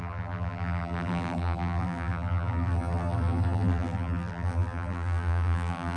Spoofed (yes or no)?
yes